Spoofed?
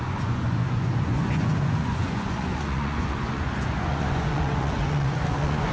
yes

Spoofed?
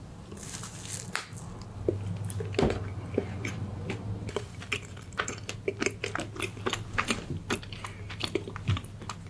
no